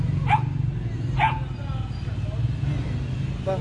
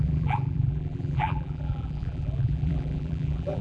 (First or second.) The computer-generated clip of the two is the second